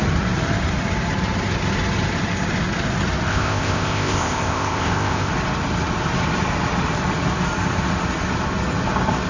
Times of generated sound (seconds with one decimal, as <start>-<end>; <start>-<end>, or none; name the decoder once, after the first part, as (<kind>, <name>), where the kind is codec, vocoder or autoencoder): 3.3-5.3 (codec, ZipCodec)